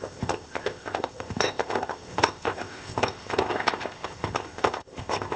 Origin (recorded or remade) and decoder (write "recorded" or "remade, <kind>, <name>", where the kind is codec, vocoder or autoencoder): remade, codec, ZipCodec